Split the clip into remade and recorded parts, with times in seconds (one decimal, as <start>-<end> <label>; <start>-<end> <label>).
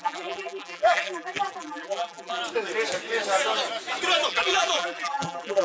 0.0-2.4 remade; 2.4-4.3 recorded; 4.3-5.6 remade